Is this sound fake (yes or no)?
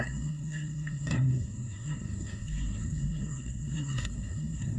yes